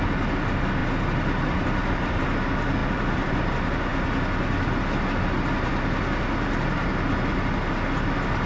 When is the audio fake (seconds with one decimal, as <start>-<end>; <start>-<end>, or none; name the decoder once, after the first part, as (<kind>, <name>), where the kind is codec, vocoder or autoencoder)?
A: 0.8-2.2 (vocoder, BigVGAN v2); 2.8-3.3